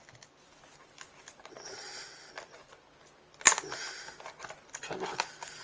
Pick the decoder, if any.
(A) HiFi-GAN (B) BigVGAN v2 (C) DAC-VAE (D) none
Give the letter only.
D